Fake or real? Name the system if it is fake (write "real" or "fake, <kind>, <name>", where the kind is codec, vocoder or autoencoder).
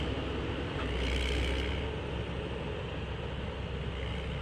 real